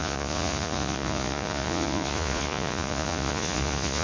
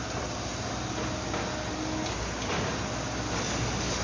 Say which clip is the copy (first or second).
first